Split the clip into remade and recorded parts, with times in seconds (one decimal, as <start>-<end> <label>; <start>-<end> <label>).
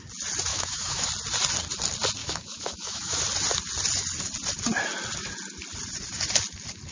0.0-0.5 recorded; 0.5-1.1 remade; 1.1-2.2 recorded; 2.2-3.2 remade; 3.2-6.9 recorded